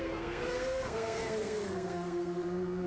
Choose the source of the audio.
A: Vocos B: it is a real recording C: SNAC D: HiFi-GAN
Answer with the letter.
C